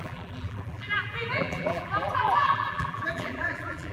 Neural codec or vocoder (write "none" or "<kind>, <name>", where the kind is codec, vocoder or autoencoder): vocoder, BigVGAN v2